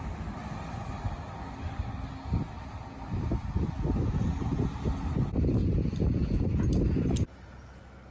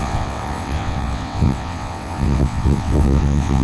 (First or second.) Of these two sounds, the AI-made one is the second